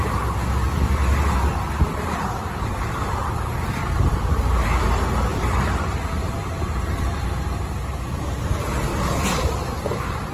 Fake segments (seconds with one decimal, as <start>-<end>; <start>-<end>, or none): 0.0-8.9; 9.8-10.3